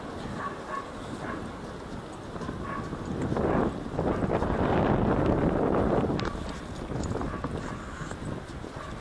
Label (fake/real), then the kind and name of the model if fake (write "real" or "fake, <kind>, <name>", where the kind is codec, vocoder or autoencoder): real